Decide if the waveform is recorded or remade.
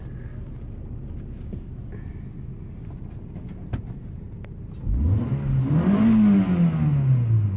recorded